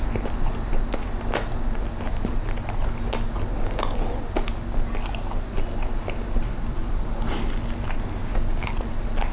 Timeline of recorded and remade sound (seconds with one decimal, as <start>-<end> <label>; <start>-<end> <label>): 0.0-8.2 recorded; 8.2-8.7 remade; 8.7-9.3 recorded